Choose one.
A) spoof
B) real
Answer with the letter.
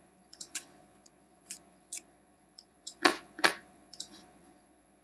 A